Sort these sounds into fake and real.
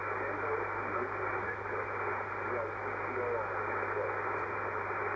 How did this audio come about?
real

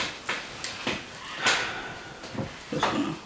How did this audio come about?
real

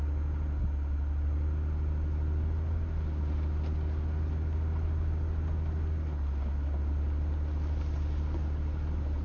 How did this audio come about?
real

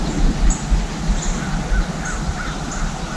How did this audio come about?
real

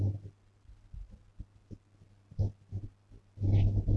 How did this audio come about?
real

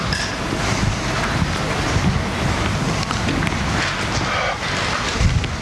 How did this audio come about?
real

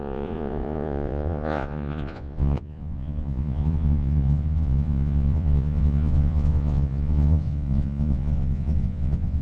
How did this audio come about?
fake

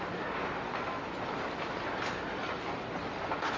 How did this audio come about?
real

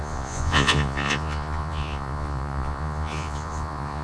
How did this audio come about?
fake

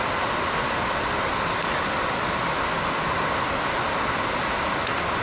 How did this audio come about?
real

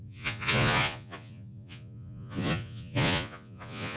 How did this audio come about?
fake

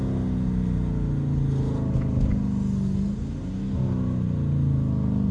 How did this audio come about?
real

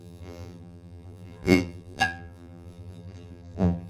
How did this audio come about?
fake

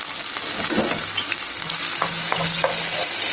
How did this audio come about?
real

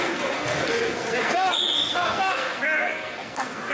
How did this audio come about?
fake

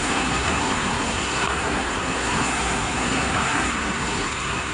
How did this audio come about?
fake